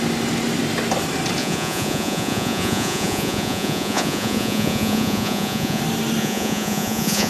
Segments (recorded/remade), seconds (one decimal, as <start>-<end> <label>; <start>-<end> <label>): 0.0-1.4 recorded; 1.4-5.8 remade; 5.8-6.2 recorded; 6.2-7.3 remade